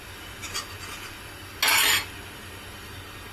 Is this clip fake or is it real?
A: real